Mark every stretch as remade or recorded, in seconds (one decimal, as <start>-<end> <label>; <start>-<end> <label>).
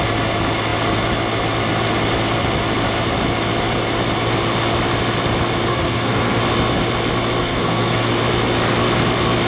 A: 0.0-5.7 recorded; 5.7-6.4 remade; 6.4-7.4 recorded; 7.4-8.1 remade; 8.1-9.5 recorded